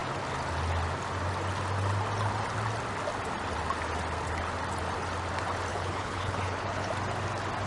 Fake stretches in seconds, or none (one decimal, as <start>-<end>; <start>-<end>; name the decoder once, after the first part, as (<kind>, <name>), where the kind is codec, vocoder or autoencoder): 5.7-6.9 (codec, HILCodec)